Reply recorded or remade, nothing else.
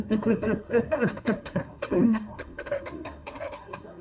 remade